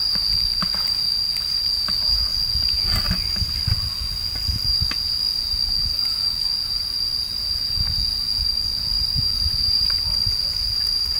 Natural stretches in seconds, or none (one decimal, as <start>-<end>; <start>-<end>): 0.0-11.2